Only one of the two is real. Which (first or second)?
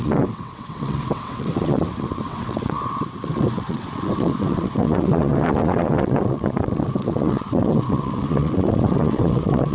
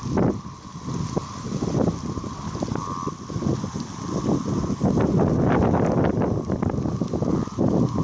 second